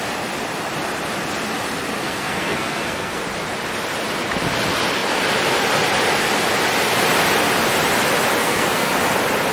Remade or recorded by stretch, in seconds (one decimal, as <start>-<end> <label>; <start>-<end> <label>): 0.0-2.0 recorded; 2.0-3.2 remade; 3.2-8.4 recorded; 8.4-8.9 remade; 8.9-9.5 recorded